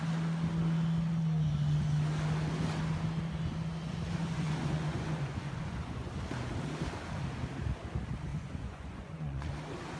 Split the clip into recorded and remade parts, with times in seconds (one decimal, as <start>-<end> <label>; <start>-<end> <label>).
0.0-4.2 recorded; 4.2-6.1 remade; 6.1-8.3 recorded; 8.3-9.5 remade; 9.5-10.0 recorded